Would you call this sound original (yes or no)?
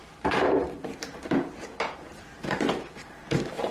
no